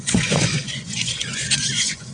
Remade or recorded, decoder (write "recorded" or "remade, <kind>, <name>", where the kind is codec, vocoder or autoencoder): remade, vocoder, Vocos